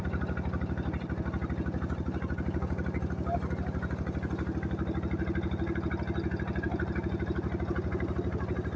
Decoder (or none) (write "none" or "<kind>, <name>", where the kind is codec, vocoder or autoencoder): none